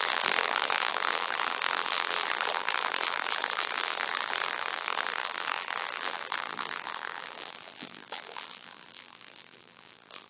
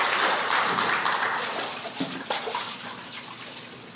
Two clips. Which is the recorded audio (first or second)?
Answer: second